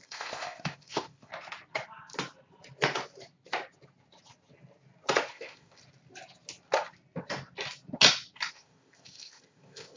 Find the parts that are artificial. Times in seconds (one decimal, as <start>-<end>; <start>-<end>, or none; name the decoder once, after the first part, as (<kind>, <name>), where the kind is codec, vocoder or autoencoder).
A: 0.0-1.3 (codec, ZipCodec); 5.3-5.8; 8.5-10.0